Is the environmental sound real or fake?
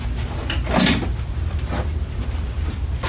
real